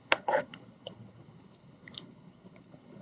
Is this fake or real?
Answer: fake